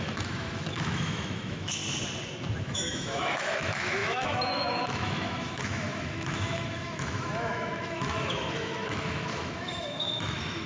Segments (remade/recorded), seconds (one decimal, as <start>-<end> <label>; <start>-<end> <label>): 0.0-1.8 remade; 1.8-2.6 recorded; 2.6-10.7 remade